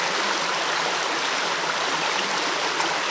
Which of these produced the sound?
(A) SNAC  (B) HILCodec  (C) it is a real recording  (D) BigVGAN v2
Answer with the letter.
C